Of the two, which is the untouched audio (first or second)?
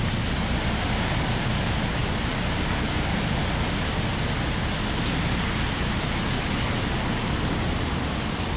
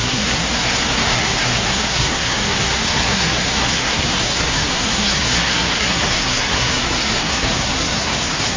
first